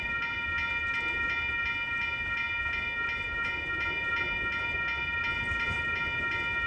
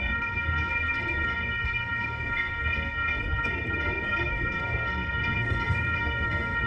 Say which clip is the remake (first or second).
second